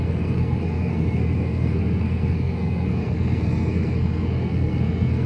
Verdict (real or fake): fake